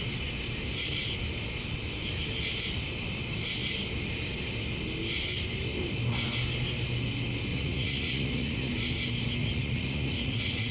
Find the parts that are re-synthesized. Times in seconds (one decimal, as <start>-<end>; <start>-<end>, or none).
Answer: 7.5-8.7; 9.4-10.7